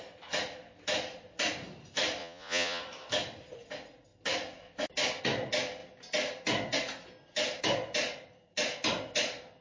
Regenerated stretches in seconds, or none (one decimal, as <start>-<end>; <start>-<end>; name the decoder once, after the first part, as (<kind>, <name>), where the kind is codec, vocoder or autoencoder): 2.2-2.8 (vocoder, Vocos)